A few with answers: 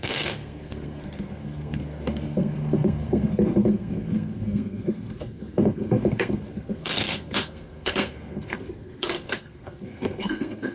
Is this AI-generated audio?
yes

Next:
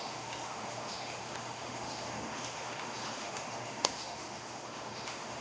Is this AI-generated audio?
yes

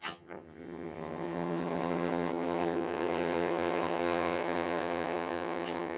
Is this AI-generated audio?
yes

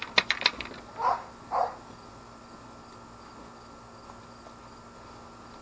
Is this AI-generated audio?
no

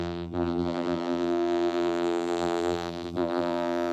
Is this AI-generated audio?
yes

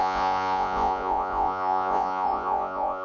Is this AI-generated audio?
yes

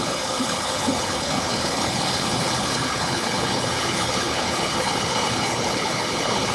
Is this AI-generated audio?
yes